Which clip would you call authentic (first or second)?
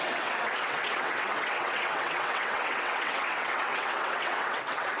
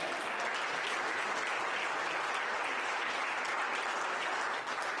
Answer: second